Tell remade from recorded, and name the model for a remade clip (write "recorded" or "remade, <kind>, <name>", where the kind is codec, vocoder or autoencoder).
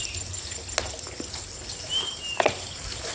recorded